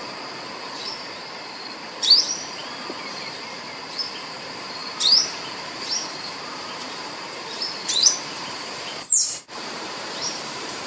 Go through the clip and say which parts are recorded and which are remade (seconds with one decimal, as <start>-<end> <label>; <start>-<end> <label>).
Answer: 0.0-10.9 remade